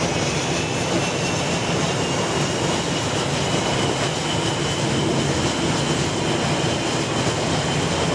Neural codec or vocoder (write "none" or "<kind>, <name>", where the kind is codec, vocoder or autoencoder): none